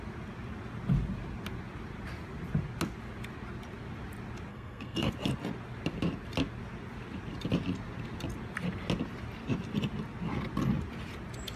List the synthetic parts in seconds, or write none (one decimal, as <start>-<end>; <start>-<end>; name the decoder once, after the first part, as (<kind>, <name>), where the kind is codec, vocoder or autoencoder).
4.5-5.1 (codec, SNAC)